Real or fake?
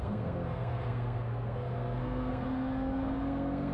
fake